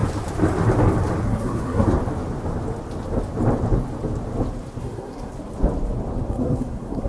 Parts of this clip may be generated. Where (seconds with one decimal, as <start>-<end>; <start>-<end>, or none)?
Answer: 1.2-2.0; 4.8-5.3; 6.3-7.1